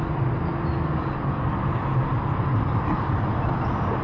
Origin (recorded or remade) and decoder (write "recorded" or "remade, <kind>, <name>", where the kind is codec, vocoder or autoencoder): recorded